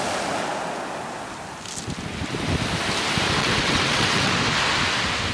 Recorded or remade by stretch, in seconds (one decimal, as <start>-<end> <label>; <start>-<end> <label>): 0.0-3.4 recorded; 3.4-4.3 remade; 4.3-5.3 recorded